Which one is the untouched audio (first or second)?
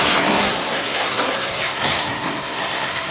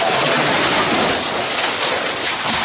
second